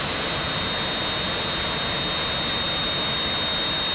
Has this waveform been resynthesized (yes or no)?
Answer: no